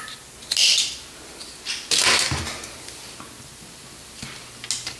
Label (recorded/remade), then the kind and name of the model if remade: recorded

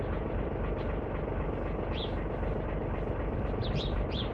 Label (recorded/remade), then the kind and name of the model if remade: remade, vocoder, BigVGAN v2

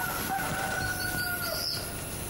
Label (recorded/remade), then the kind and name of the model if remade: recorded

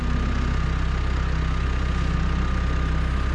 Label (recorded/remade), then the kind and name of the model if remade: recorded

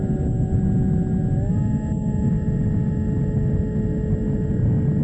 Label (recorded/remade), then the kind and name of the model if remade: recorded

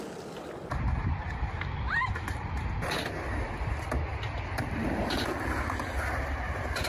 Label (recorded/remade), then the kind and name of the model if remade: recorded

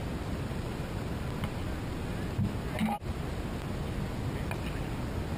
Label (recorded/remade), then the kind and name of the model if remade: recorded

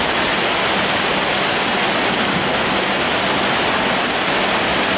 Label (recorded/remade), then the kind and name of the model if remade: recorded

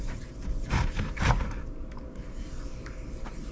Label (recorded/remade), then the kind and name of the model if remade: remade, vocoder, BigVGAN v2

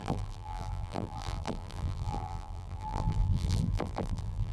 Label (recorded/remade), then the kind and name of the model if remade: remade, vocoder, BigVGAN v2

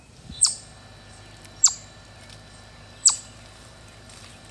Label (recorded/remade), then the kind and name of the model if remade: remade, vocoder, BigVGAN v2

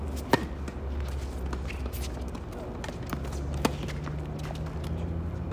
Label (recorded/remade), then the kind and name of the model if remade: recorded